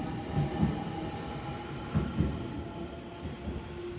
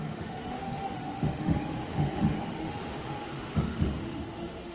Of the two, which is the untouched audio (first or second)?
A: first